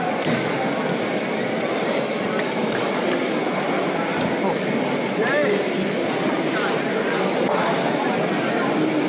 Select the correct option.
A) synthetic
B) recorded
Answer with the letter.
B